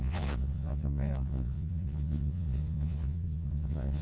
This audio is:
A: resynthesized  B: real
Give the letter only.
A